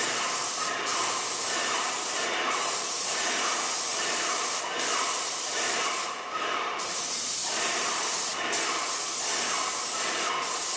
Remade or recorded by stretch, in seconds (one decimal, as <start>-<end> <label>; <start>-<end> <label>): 0.0-0.9 recorded; 0.9-3.3 remade; 3.3-3.9 recorded; 3.9-8.2 remade; 8.2-10.8 recorded